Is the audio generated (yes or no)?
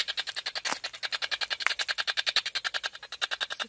no